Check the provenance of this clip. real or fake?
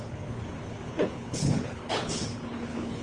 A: fake